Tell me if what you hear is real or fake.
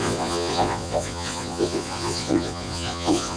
fake